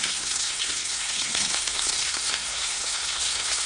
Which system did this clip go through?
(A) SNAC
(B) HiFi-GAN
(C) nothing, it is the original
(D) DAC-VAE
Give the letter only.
A